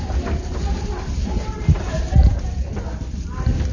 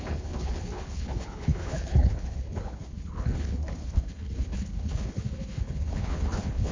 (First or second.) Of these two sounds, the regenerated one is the second